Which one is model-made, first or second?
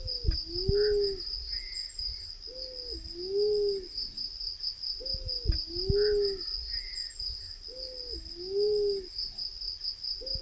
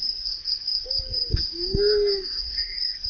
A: second